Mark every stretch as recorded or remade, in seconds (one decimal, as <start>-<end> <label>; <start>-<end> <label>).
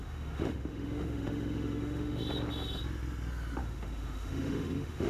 0.0-2.2 remade; 2.2-3.6 recorded; 3.6-5.1 remade